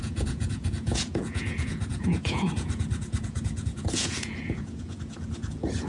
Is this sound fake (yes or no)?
yes